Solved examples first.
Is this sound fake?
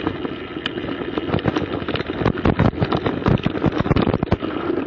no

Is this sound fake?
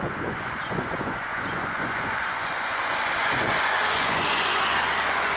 yes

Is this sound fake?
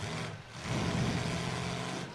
no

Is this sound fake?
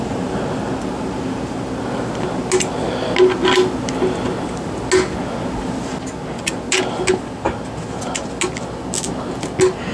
no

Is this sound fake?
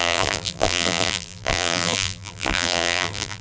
yes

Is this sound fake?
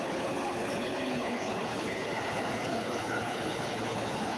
yes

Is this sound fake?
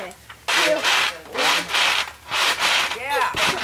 no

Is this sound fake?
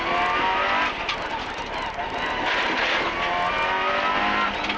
no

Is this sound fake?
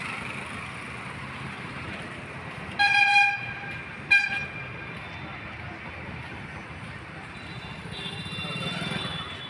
no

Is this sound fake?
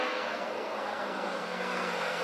yes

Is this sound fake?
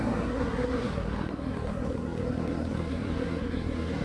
yes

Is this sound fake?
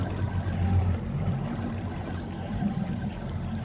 no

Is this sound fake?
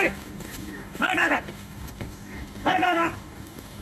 yes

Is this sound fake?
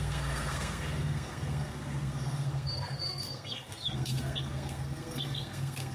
yes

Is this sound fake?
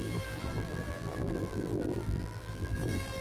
yes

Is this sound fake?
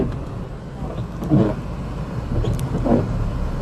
no